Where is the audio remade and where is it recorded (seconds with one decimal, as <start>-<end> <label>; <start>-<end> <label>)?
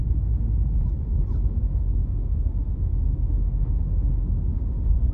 0.0-2.0 recorded; 2.0-5.1 remade